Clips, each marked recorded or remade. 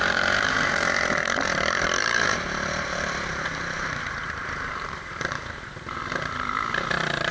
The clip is remade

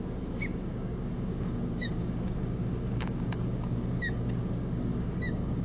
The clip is remade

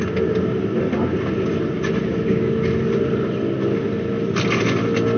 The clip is recorded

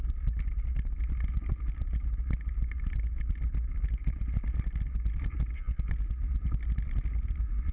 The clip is recorded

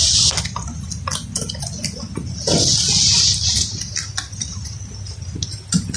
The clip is recorded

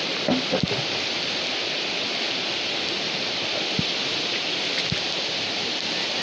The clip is recorded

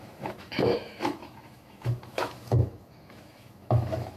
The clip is remade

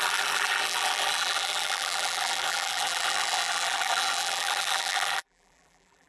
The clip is remade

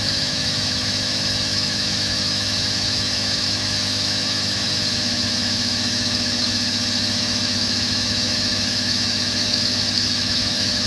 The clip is remade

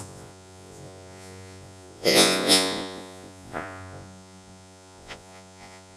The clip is remade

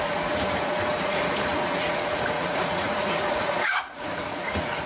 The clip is remade